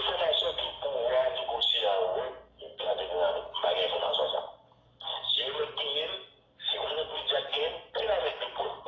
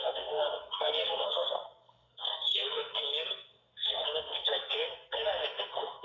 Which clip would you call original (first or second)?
first